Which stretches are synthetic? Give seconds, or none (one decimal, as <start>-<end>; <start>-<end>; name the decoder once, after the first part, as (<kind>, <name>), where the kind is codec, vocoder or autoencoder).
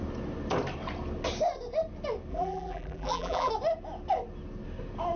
2.3-3.5 (vocoder, BigVGAN v2)